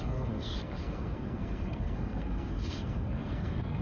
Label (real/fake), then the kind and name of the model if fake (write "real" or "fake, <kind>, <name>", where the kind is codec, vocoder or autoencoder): fake, codec, SNAC